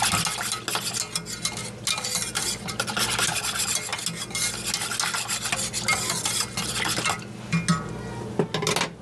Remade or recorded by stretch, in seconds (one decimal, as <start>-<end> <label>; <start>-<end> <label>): 0.0-9.0 recorded